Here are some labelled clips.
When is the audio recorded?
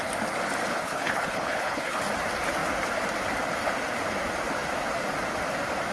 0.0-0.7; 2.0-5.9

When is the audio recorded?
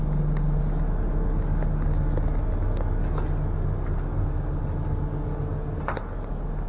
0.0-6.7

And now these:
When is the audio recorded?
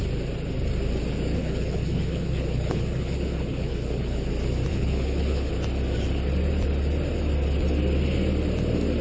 0.0-1.4; 4.3-4.7; 5.5-9.0